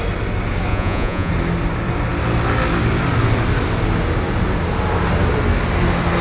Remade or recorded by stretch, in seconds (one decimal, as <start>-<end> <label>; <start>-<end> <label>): 0.0-0.7 recorded; 0.7-1.3 remade; 1.3-6.2 recorded